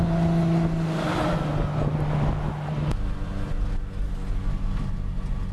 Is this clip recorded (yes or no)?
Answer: yes